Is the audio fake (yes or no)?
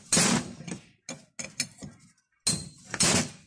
no